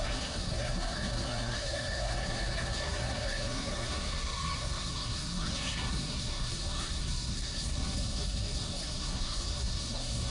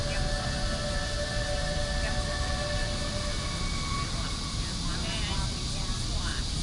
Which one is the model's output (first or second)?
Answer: first